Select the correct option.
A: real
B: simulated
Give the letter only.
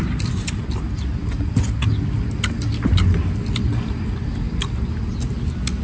A